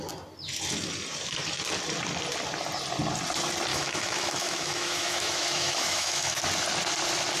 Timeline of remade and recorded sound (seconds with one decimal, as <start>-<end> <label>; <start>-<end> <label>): 0.0-3.7 recorded; 3.7-6.4 remade; 6.4-7.4 recorded